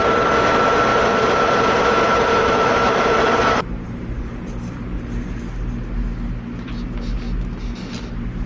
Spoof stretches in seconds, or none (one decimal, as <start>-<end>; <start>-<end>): 0.9-5.0